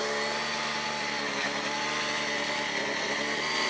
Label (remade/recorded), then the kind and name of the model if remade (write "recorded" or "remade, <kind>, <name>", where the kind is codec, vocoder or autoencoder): recorded